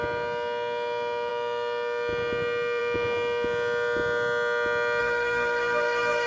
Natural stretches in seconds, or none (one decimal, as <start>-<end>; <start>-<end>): 0.0-5.0